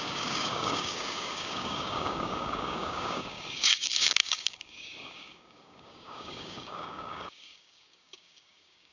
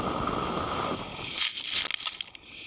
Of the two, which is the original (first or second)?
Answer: second